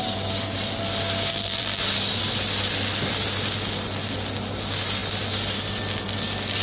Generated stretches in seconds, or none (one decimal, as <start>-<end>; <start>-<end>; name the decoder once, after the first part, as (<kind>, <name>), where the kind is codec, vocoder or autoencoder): 1.3-1.8 (vocoder, BigVGAN v2)